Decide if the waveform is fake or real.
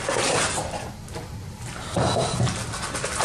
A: real